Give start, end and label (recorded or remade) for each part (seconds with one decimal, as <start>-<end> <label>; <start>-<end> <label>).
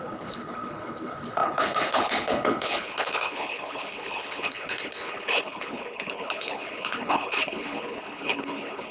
0.0-8.9 remade